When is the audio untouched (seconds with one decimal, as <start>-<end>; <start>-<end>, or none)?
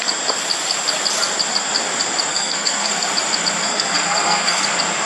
0.0-2.3; 3.1-3.6; 4.6-5.1